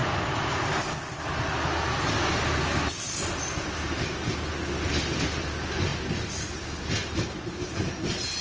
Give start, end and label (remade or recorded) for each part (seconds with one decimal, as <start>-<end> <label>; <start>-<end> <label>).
0.0-8.4 recorded